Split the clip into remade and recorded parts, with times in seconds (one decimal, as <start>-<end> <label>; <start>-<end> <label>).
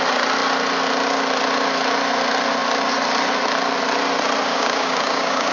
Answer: 0.0-4.5 recorded; 4.5-5.5 remade